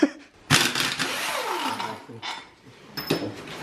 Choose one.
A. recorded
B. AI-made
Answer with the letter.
A